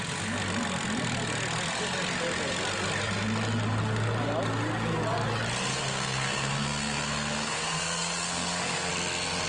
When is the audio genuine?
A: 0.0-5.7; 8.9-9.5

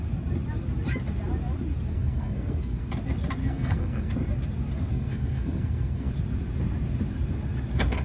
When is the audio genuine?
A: 0.0-1.9; 2.9-3.4; 4.1-4.9; 6.1-8.0

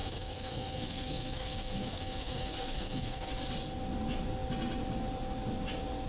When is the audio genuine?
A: 3.3-6.1